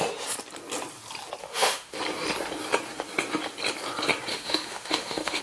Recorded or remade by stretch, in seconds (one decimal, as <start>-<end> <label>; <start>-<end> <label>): 0.0-1.4 recorded; 1.4-2.0 remade; 2.0-4.3 recorded; 4.3-5.4 remade